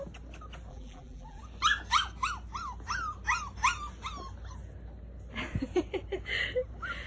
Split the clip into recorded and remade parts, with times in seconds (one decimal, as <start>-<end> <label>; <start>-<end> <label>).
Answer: 0.0-0.7 recorded; 0.7-1.4 remade; 1.4-7.1 recorded